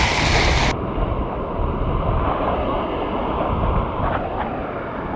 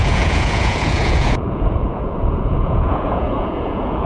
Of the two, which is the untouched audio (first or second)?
first